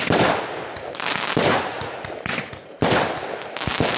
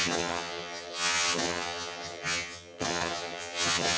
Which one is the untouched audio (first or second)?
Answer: first